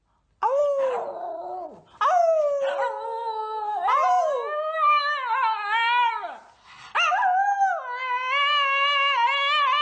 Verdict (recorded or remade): recorded